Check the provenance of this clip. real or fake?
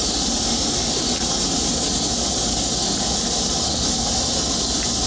real